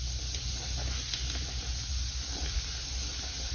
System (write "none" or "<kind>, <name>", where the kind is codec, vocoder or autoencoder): none